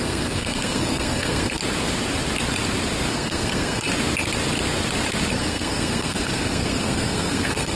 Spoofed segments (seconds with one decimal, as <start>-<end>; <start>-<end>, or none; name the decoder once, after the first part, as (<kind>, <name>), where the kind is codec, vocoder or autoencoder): 0.0-1.6 (codec, SNAC); 3.1-3.9; 5.3-7.8